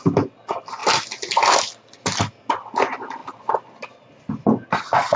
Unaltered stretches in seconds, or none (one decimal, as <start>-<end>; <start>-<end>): 0.0-5.2